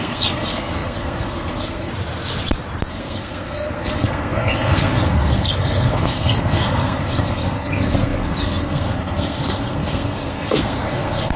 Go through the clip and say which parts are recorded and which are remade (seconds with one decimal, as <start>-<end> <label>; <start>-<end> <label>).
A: 0.0-1.9 remade; 1.9-2.9 recorded; 2.9-11.4 remade